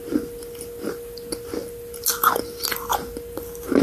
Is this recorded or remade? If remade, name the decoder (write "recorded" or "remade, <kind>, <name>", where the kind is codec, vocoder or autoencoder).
recorded